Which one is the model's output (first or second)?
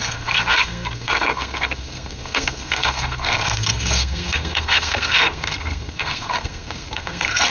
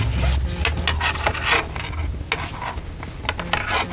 first